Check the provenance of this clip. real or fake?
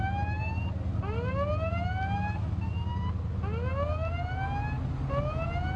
real